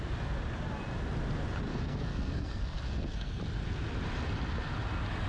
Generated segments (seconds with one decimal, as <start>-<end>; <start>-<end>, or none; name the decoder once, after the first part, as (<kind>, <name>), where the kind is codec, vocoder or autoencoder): 1.7-3.4 (codec, SNAC)